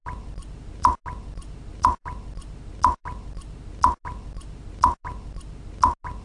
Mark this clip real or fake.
real